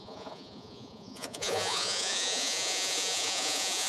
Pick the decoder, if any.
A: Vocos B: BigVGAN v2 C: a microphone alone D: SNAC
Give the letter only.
A